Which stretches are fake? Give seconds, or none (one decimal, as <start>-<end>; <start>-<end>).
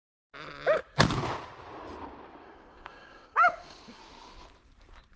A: 2.4-4.0